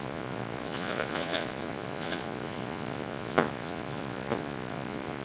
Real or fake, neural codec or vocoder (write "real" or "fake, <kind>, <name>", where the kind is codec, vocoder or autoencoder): fake, vocoder, Vocos